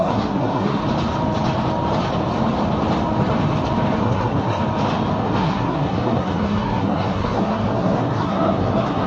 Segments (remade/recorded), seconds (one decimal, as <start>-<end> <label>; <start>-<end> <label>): 0.0-0.8 remade; 0.8-4.0 recorded; 4.0-4.6 remade; 4.6-5.2 recorded; 5.2-9.1 remade